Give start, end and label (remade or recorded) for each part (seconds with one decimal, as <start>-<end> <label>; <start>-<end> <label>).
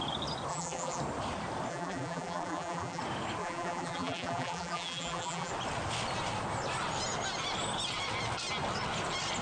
0.0-0.5 recorded; 0.5-1.0 remade; 1.0-1.7 recorded; 1.7-3.0 remade; 3.0-3.4 recorded; 3.4-5.5 remade; 5.5-9.4 recorded